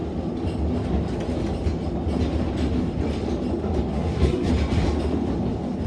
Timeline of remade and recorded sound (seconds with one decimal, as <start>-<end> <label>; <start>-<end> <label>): 0.0-3.9 recorded; 3.9-4.5 remade; 4.5-5.9 recorded